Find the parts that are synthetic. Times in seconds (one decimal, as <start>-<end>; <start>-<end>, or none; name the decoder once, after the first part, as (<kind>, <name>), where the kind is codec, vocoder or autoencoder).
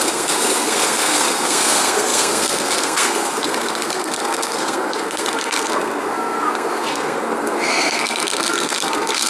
0.0-9.3 (codec, SNAC)